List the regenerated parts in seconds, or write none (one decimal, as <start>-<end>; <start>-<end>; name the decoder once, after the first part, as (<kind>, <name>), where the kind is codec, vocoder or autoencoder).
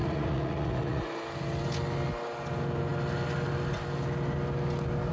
0.0-1.1 (vocoder, Vocos)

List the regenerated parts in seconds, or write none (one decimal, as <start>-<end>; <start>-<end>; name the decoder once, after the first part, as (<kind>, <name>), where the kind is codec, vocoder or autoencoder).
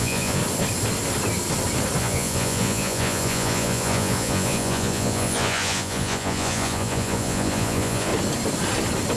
0.0-0.4 (vocoder, Vocos); 2.0-8.1